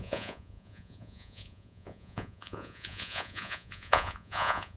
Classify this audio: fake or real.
fake